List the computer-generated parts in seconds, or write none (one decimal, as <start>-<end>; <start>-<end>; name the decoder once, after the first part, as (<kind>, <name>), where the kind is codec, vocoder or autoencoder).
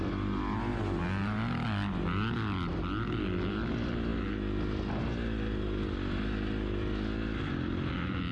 none